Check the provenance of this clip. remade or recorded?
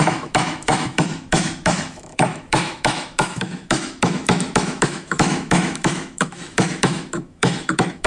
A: remade